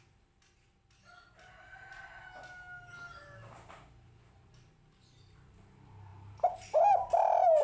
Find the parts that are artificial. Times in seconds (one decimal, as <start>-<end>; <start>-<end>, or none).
none